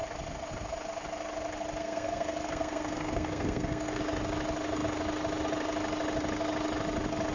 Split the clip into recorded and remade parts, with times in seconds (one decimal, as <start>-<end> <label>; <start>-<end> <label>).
0.0-1.8 recorded; 1.8-4.0 remade; 4.0-7.3 recorded